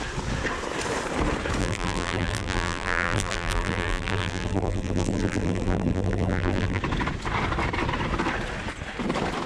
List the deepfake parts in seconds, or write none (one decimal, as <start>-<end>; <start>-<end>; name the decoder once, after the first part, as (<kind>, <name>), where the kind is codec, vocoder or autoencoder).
1.6-6.8 (vocoder, BigVGAN v2)